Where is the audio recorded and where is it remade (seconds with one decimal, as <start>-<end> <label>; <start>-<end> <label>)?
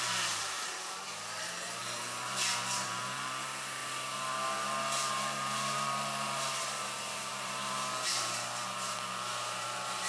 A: 0.0-10.1 remade